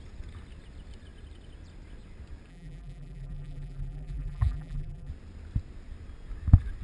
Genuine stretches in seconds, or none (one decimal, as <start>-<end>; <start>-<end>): 0.0-2.5; 5.1-6.8